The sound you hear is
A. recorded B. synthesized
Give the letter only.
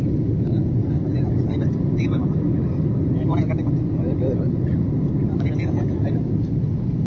A